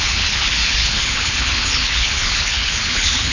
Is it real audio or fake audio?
fake